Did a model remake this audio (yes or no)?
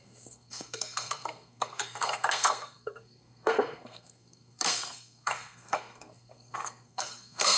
yes